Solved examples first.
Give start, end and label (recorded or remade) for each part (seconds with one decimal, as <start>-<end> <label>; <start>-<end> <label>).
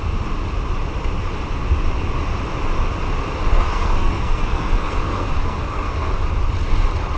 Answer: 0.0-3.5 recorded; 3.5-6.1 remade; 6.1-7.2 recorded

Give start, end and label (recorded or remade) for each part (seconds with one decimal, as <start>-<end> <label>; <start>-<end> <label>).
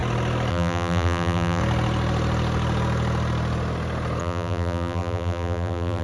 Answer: 0.0-0.5 recorded; 0.5-1.6 remade; 1.6-4.2 recorded; 4.2-6.0 remade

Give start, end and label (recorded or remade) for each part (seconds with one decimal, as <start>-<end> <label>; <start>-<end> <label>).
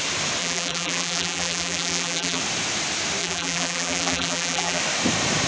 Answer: 0.0-0.4 recorded; 0.4-2.4 remade; 2.4-3.2 recorded; 3.2-4.8 remade; 4.8-5.5 recorded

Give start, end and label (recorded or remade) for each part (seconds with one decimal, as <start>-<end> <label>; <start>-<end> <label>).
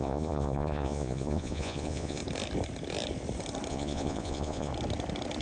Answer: 0.0-2.2 remade; 2.2-3.7 recorded; 3.7-4.7 remade; 4.7-5.4 recorded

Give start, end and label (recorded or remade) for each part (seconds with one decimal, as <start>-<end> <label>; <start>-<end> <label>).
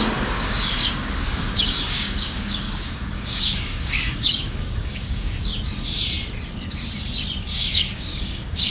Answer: 0.0-5.5 remade; 5.5-7.5 recorded; 7.5-8.7 remade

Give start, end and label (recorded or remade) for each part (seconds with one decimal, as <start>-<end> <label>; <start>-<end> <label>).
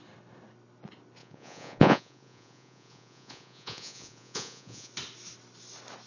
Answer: 0.0-1.2 recorded; 1.2-4.9 remade; 4.9-6.1 recorded